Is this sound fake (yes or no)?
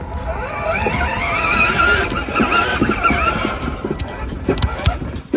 no